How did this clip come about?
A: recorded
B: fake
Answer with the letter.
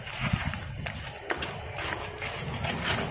A